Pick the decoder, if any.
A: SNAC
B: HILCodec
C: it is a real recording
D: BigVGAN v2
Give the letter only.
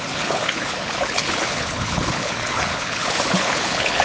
B